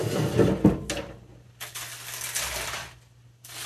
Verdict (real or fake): real